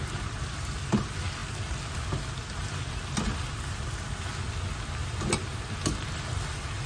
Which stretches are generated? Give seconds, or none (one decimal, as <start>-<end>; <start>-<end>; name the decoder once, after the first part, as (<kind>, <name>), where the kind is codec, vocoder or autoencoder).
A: none